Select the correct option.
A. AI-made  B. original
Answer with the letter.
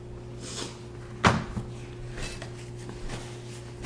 B